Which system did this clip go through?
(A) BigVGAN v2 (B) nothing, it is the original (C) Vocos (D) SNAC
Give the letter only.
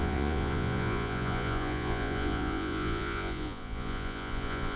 C